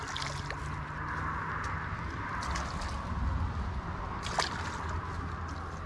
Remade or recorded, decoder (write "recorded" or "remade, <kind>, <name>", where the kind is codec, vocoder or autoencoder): recorded